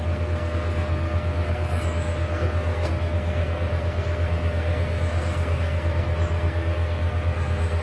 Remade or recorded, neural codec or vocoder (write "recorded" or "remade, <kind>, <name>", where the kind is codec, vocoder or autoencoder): remade, codec, SNAC